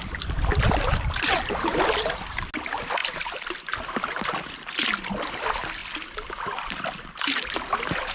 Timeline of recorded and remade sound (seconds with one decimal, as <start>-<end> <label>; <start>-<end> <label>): 0.0-8.1 recorded